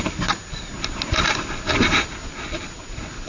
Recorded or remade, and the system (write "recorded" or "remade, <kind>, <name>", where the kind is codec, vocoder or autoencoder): recorded